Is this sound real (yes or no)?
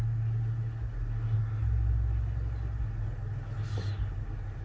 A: yes